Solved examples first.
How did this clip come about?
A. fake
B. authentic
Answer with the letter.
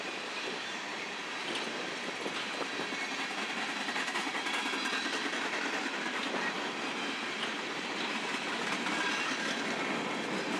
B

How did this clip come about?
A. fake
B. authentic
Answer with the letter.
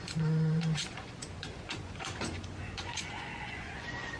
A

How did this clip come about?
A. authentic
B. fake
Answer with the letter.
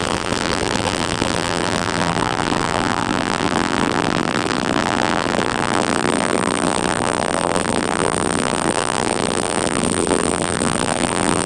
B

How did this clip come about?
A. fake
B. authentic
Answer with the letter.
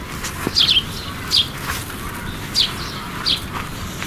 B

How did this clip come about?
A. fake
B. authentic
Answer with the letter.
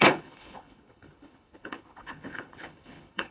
A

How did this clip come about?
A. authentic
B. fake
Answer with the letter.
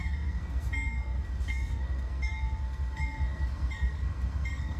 B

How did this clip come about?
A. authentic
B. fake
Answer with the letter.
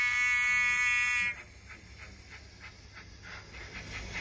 A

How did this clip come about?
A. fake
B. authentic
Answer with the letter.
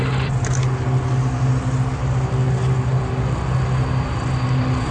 B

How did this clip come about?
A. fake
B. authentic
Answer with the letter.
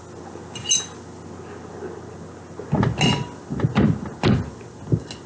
B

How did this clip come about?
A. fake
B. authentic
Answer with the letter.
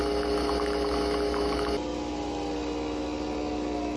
B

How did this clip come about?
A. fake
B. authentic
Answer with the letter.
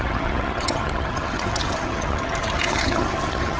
A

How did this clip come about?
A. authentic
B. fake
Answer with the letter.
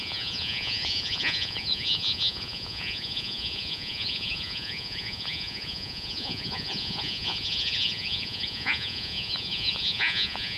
B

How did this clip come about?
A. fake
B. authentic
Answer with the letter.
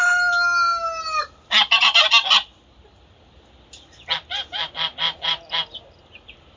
B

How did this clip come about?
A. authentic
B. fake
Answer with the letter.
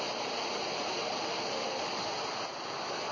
A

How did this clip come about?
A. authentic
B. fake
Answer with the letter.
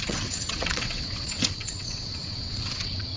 B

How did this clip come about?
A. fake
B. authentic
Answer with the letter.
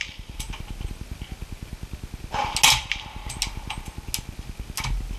B